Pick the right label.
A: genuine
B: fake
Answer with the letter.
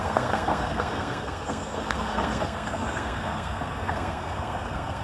B